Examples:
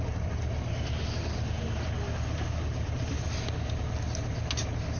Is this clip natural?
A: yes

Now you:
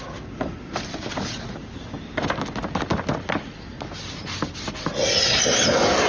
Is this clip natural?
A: yes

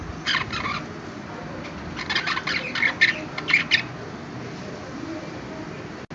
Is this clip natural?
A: yes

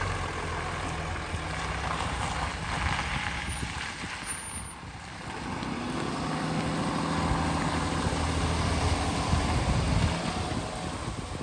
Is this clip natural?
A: yes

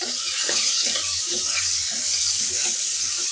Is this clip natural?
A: no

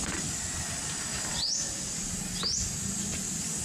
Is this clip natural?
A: yes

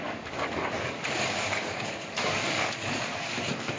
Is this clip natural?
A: no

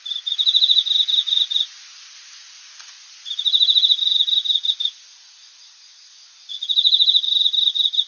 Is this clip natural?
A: yes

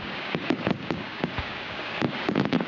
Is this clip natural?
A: no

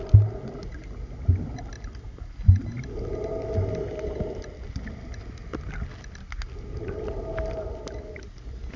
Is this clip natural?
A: yes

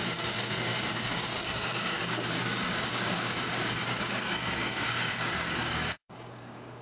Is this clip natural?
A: no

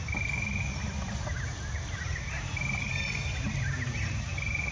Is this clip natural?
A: yes